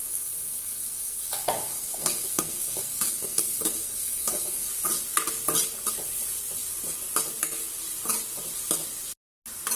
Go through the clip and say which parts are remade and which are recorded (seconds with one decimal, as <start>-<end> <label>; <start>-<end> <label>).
0.0-4.7 remade; 4.7-9.8 recorded